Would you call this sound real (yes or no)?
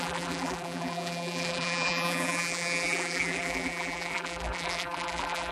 no